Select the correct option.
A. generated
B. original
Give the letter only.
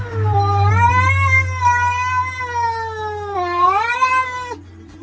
B